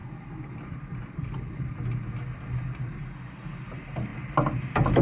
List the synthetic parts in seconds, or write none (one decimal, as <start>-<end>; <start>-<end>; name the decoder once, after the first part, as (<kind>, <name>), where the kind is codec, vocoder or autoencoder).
none